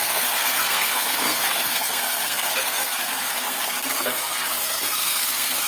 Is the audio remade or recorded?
remade